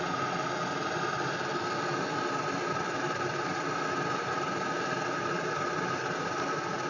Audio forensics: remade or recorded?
recorded